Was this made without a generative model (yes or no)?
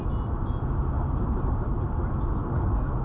yes